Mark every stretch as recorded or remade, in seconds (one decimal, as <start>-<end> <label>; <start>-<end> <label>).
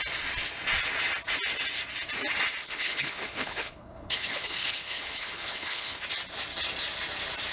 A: 0.0-2.6 recorded; 2.6-6.0 remade; 6.0-7.5 recorded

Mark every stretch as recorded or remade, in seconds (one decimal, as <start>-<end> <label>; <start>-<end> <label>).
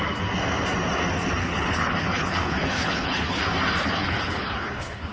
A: 0.0-1.4 recorded; 1.4-3.4 remade; 3.4-3.8 recorded; 3.8-5.1 remade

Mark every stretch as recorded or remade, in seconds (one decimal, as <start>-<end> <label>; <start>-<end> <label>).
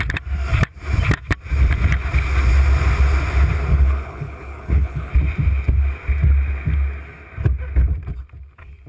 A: 0.0-3.7 recorded; 3.7-5.1 remade; 5.1-8.9 recorded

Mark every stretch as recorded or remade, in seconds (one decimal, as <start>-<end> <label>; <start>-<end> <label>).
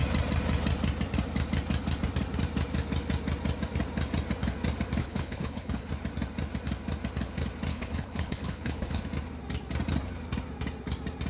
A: 0.0-5.0 recorded; 5.0-5.9 remade; 5.9-7.7 recorded; 7.7-9.0 remade; 9.0-11.3 recorded